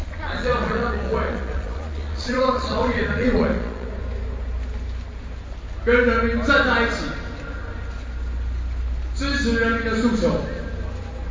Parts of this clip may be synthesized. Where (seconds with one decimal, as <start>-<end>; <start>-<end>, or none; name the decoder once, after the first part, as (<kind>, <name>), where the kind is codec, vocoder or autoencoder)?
0.0-3.9 (vocoder, Vocos)